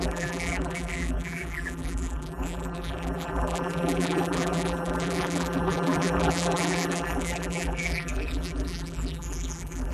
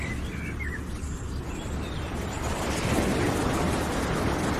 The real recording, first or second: second